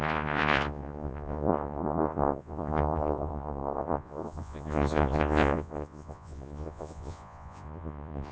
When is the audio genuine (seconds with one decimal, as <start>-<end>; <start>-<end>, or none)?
none